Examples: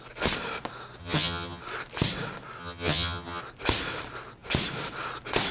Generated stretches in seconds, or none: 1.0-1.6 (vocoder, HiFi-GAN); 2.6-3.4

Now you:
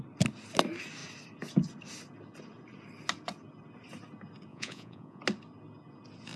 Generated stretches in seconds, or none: 4.5-5.2 (vocoder, Vocos)

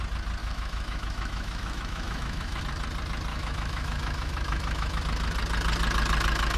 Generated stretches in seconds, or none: 0.4-2.6 (autoencoder, DAC-VAE); 3.3-5.0

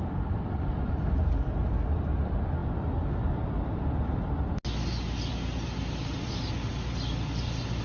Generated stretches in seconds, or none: none

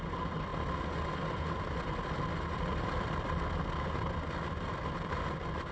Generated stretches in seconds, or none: 4.7-5.3 (vocoder, BigVGAN v2)

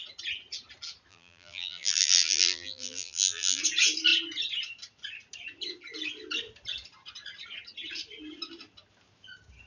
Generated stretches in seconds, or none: 1.1-3.6 (vocoder, BigVGAN v2)